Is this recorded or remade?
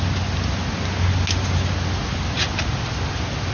recorded